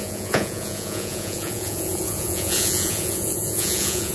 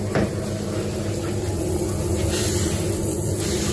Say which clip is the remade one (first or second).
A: first